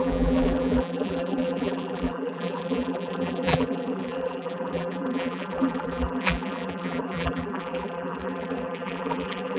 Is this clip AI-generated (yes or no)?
yes